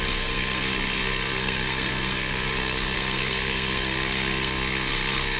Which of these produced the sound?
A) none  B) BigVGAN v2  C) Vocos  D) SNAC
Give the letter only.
D